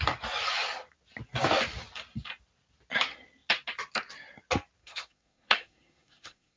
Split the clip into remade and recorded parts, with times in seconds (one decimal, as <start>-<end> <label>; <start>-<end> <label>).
0.0-4.8 recorded; 4.8-6.6 remade